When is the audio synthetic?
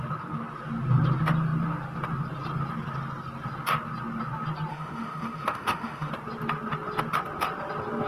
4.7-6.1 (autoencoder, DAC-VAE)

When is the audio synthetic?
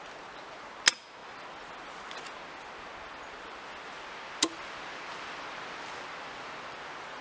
none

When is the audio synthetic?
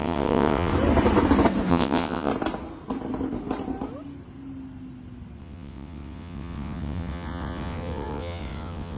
0.0-0.7 (vocoder, WaveNeXt); 1.7-2.3; 5.4-9.0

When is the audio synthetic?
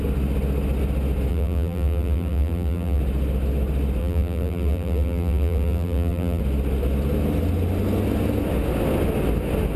1.3-3.0 (vocoder, BigVGAN v2); 4.0-6.4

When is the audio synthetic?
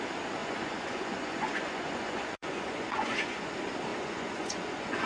0.4-3.5 (vocoder, Vocos); 3.9-5.1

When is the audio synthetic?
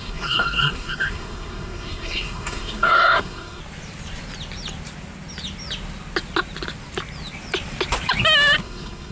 0.0-3.6 (codec, SNAC); 8.6-9.1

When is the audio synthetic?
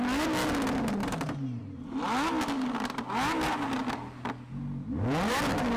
1.0-1.6 (vocoder, BigVGAN v2)